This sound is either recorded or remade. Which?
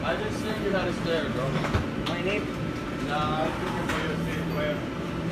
recorded